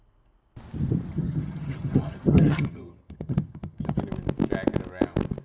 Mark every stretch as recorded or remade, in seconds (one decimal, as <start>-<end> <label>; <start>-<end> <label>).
0.0-1.1 recorded; 1.1-4.0 remade; 4.0-5.4 recorded